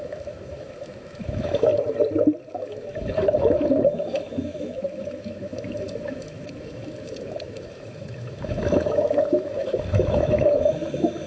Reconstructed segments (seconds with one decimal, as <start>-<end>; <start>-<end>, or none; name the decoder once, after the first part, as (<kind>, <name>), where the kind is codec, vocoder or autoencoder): 0.0-1.7 (autoencoder, DAC-VAE); 2.5-11.3